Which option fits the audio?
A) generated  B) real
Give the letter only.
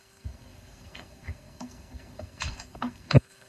A